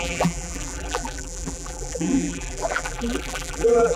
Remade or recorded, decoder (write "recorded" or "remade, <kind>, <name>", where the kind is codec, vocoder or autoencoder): remade, vocoder, BigVGAN v2